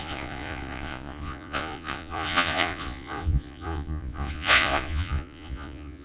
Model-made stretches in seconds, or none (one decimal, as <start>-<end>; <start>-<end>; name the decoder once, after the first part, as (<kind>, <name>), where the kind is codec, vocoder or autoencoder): 0.0-6.0 (vocoder, Vocos)